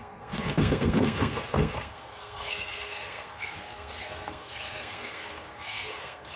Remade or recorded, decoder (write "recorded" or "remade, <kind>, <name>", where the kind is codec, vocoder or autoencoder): remade, codec, SNAC